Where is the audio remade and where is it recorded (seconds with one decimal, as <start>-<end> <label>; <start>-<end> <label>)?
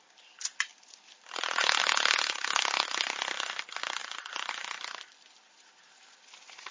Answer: 0.0-4.0 recorded; 4.0-4.5 remade; 4.5-6.7 recorded